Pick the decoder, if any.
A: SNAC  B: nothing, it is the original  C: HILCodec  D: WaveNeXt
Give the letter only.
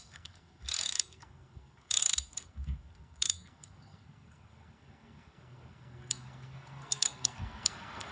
A